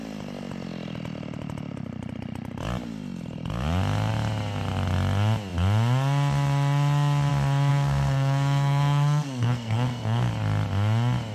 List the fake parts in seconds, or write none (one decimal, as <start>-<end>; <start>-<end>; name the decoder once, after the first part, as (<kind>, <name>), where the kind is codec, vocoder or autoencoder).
7.7-10.3 (codec, SNAC)